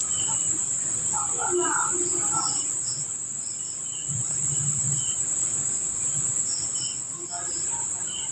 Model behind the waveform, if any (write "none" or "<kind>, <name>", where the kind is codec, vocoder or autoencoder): none